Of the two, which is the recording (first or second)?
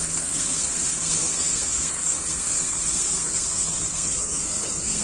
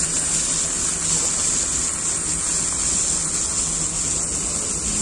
second